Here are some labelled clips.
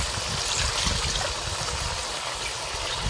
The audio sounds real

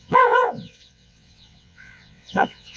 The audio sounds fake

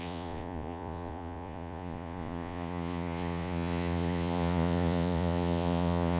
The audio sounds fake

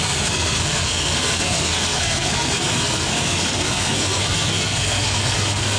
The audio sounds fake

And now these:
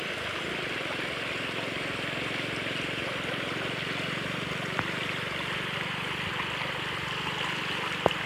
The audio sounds real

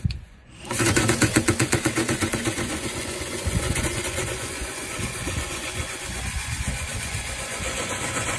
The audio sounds fake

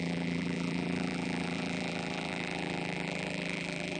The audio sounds fake